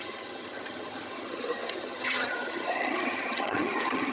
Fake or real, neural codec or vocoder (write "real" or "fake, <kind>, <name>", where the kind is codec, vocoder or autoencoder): fake, vocoder, HiFi-GAN